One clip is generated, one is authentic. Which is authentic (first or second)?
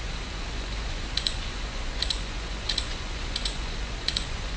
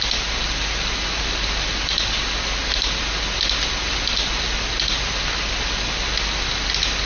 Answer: second